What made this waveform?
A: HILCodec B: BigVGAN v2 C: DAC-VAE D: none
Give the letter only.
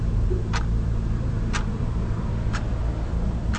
B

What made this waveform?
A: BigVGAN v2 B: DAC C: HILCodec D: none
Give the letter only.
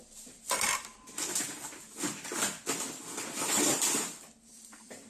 A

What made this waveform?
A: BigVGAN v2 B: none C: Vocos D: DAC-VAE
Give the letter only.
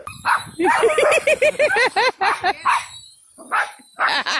B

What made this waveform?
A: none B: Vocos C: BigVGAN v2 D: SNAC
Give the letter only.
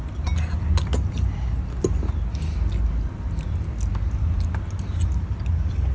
A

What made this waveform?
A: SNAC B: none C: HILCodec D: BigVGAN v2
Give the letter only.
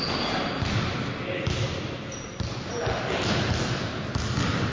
B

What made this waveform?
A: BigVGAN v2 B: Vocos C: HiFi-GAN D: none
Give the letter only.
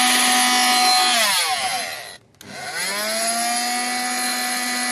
D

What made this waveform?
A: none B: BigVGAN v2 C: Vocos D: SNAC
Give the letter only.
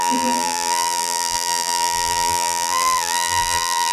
B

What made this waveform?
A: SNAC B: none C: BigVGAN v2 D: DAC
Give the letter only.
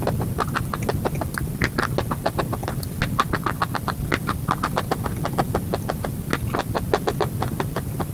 B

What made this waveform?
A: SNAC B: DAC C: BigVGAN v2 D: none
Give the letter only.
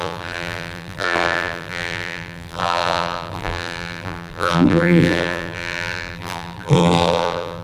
C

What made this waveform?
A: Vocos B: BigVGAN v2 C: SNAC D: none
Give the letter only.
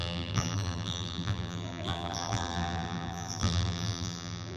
B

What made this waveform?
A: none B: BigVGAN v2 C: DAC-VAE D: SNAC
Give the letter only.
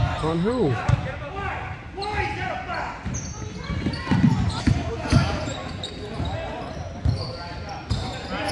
A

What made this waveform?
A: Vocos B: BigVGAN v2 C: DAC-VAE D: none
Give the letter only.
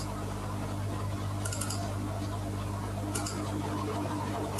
D